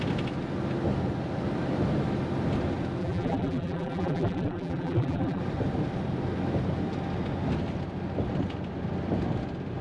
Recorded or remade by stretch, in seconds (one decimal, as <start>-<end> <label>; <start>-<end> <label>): 0.0-3.0 recorded; 3.0-5.4 remade; 5.4-9.8 recorded